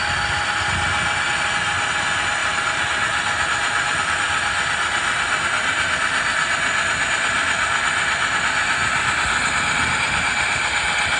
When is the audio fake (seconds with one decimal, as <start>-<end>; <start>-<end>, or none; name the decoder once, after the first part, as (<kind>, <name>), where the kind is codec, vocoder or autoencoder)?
2.4-4.0 (vocoder, BigVGAN v2)